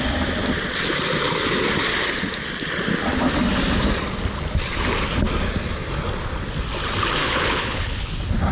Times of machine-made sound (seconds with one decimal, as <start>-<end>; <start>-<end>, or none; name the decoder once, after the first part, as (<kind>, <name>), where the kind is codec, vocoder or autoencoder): 7.2-8.1 (codec, HILCodec)